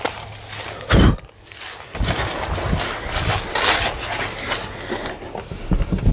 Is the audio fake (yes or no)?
no